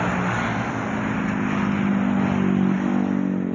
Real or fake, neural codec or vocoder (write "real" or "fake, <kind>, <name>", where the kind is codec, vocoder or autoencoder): real